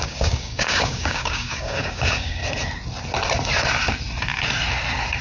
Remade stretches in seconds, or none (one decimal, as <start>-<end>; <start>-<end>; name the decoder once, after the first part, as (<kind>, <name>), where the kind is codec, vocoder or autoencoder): 0.0-2.4 (codec, DAC)